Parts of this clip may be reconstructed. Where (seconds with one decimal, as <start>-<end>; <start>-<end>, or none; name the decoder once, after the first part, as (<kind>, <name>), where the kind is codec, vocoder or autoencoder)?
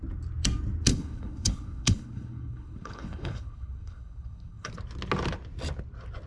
0.9-4.7 (codec, HILCodec)